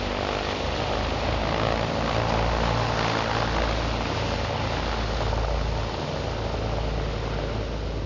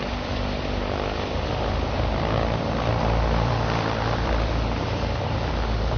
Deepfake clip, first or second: second